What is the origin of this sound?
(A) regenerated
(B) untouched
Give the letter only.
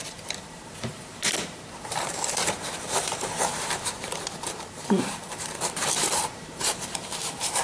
A